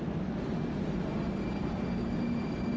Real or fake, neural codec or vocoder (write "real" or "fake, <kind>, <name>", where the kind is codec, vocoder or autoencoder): real